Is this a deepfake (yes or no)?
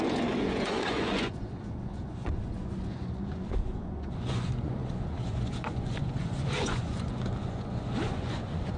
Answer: yes